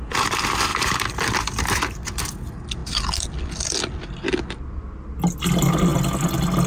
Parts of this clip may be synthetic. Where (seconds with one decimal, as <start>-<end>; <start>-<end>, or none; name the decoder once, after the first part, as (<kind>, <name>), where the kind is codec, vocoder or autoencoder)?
0.7-1.6 (vocoder, BigVGAN v2)